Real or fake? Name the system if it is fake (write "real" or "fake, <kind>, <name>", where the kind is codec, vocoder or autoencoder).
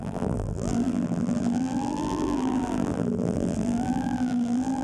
fake, vocoder, BigVGAN v2